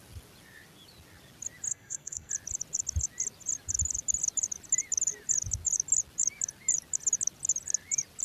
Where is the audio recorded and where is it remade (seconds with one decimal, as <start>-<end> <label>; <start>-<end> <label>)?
0.0-1.7 recorded; 1.7-2.3 remade; 2.3-8.2 recorded